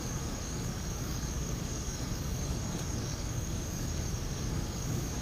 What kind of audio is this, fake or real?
fake